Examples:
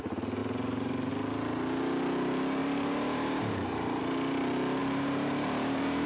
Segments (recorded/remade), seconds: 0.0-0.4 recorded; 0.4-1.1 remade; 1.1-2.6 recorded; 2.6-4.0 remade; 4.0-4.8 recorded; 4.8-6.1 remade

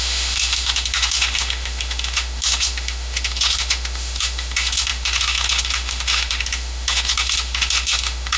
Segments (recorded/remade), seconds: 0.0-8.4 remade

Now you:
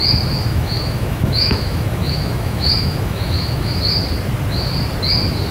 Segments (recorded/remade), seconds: 0.0-0.5 recorded; 0.5-3.8 remade; 3.8-5.5 recorded